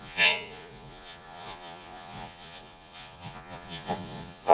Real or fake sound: fake